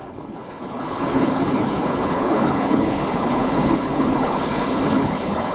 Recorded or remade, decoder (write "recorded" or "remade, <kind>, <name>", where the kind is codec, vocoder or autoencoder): remade, codec, HILCodec